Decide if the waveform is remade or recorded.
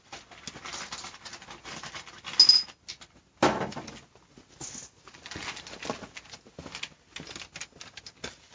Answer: recorded